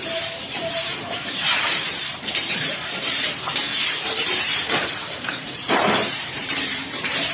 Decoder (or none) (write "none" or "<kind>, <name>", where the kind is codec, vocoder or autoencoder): vocoder, BigVGAN v2